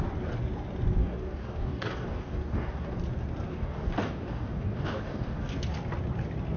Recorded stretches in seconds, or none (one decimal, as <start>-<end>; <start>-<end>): 0.0-1.0; 3.0-3.5; 5.6-6.6